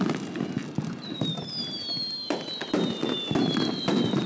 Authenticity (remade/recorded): recorded